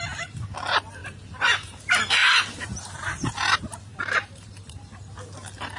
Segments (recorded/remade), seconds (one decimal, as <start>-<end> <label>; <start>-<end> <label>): 0.0-1.0 recorded; 1.0-1.8 remade; 1.8-2.2 recorded; 2.2-2.8 remade; 2.8-3.9 recorded; 3.9-5.1 remade; 5.1-5.8 recorded